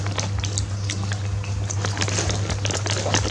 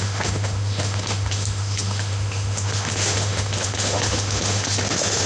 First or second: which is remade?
second